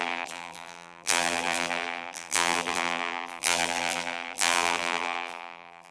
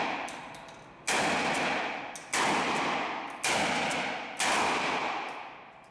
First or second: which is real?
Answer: second